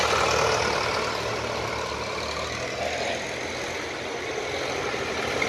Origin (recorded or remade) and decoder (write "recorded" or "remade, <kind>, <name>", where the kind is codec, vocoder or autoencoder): recorded